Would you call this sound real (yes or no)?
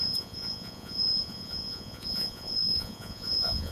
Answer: no